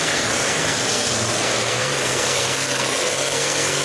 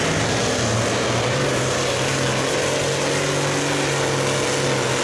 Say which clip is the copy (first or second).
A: first